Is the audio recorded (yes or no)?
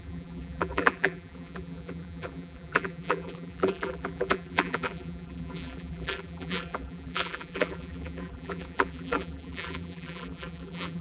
no